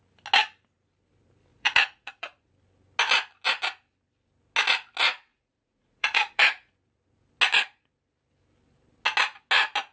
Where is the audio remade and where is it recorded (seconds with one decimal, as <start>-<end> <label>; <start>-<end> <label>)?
0.0-1.5 recorded; 1.5-2.5 remade; 2.5-5.3 recorded; 5.3-6.7 remade; 6.7-9.9 recorded